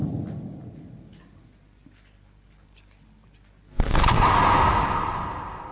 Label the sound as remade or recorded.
recorded